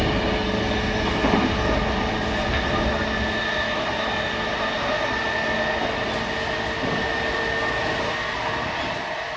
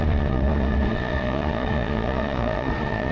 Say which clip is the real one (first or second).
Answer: first